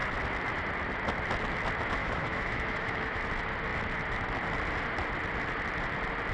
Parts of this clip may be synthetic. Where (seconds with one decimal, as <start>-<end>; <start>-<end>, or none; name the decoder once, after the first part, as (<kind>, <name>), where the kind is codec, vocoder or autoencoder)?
2.0-3.2 (autoencoder, DAC-VAE)